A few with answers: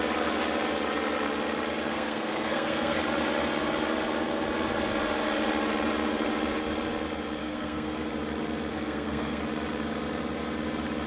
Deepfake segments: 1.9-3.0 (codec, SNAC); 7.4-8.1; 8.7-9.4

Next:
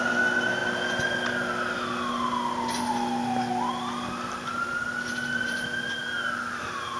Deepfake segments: none

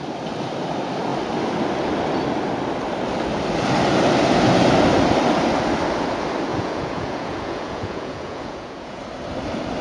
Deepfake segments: 6.5-9.0 (vocoder, Vocos)

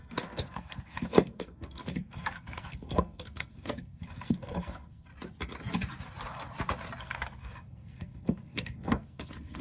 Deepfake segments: 0.0-5.1 (codec, SNAC); 7.0-9.6